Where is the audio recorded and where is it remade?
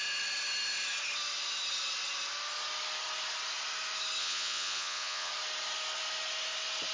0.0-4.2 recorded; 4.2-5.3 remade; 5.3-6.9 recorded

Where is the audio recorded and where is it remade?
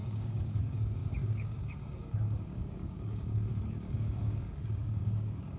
0.0-5.6 remade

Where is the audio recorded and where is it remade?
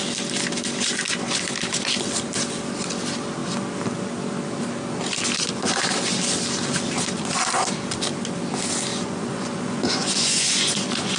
0.0-8.9 recorded; 8.9-11.2 remade